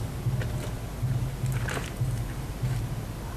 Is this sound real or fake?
real